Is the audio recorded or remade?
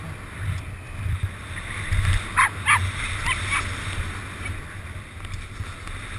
recorded